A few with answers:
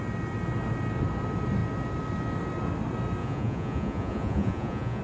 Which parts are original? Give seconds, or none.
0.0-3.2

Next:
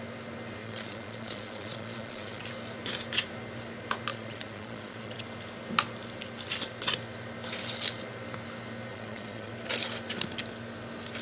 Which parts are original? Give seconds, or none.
0.0-0.6; 2.5-4.1; 5.2-8.9; 9.5-11.2

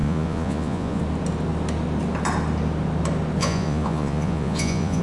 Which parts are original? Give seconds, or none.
1.0-3.4